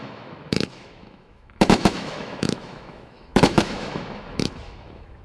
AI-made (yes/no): yes